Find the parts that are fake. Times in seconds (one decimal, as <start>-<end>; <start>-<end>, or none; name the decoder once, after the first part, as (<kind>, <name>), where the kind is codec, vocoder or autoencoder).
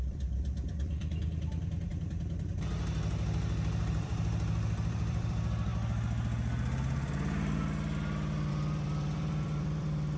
0.0-1.9 (vocoder, BigVGAN v2); 3.9-5.7; 8.5-10.2